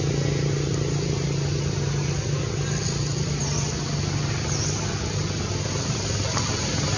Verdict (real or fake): real